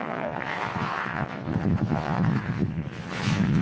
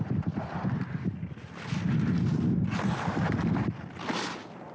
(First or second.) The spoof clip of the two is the first